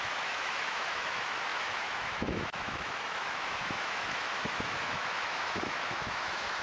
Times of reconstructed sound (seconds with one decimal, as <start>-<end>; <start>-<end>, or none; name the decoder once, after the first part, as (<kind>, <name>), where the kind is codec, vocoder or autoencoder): 0.0-6.6 (autoencoder, DAC-VAE)